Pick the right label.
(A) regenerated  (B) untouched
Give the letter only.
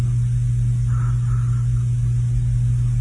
B